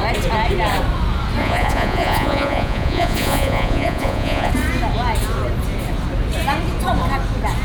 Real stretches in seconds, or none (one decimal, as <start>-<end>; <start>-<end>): 0.0-1.4; 4.5-7.6